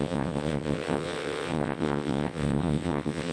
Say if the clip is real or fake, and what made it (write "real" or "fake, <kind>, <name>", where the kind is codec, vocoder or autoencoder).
fake, vocoder, WaveNeXt